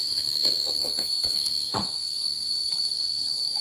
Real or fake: fake